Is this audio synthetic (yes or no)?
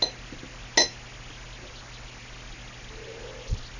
no